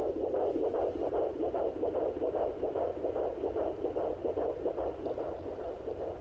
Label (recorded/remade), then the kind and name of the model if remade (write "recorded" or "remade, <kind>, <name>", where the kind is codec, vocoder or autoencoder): recorded